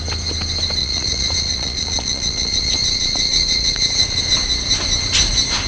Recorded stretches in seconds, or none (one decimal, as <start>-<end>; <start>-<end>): 0.0-0.8; 4.2-5.7